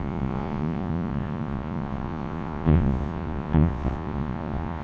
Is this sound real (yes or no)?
no